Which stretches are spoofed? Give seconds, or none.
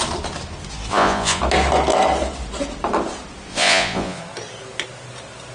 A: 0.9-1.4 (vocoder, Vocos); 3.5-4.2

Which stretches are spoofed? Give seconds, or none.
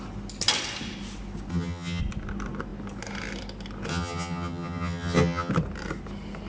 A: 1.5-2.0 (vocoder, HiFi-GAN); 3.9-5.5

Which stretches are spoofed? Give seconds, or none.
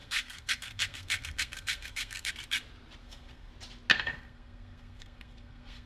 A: 0.0-2.3 (codec, SNAC); 3.0-3.5; 3.9-5.9